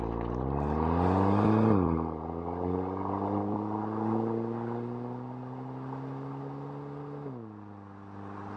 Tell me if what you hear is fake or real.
real